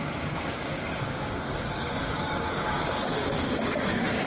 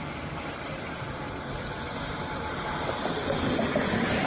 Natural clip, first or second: second